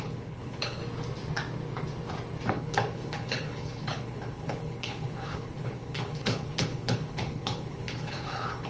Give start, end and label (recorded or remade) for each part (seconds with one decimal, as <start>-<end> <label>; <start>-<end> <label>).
0.0-0.8 remade; 0.8-2.5 recorded; 2.5-8.7 remade